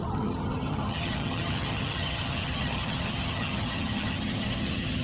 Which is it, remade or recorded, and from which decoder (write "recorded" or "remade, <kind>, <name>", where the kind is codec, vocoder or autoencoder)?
remade, vocoder, HiFi-GAN